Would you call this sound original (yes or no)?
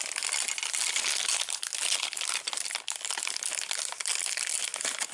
yes